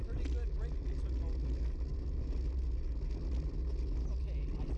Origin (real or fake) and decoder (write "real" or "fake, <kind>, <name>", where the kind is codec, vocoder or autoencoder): real